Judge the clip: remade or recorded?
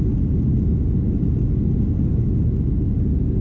recorded